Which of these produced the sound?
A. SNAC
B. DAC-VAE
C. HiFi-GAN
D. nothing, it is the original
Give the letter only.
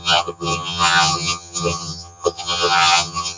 C